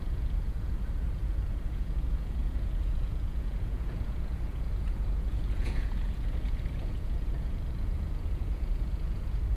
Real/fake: fake